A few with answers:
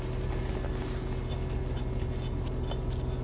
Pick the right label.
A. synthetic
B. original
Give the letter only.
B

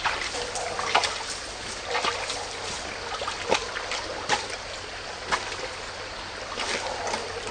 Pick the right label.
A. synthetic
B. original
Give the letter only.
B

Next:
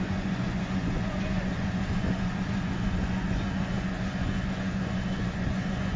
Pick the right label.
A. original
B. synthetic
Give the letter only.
B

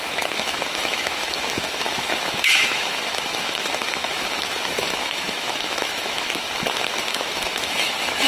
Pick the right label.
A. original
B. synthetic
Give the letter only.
B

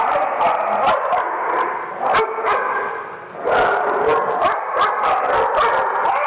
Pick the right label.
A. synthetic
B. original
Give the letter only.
B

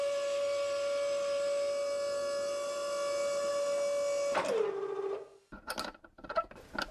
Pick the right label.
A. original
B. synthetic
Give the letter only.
A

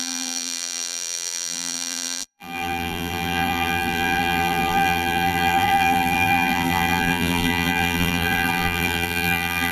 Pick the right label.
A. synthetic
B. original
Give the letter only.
A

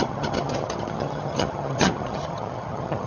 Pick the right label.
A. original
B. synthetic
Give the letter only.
B